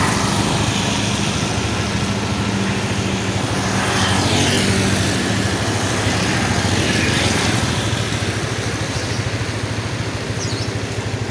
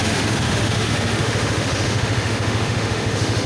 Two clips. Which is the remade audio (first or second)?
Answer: second